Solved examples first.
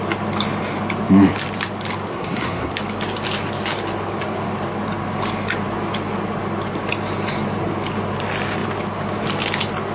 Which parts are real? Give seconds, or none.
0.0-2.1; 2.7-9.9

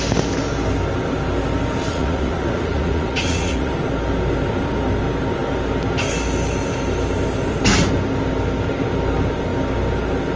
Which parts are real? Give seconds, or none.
0.0-1.9; 3.7-10.4

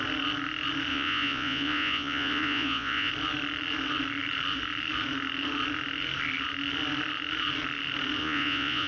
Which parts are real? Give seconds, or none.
0.0-0.9; 3.1-8.2

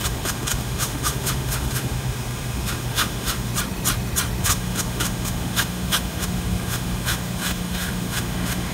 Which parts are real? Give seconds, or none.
3.5-4.4